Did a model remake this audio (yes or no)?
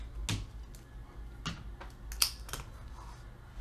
no